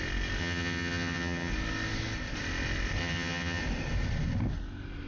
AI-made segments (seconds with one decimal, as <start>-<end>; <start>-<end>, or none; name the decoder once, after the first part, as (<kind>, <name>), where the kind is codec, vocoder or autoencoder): 0.4-1.5 (vocoder, HiFi-GAN); 3.0-3.6